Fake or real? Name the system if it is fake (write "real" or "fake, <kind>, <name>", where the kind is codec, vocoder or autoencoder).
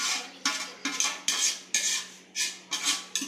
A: real